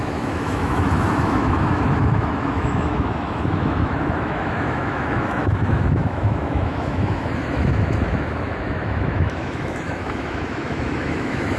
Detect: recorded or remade remade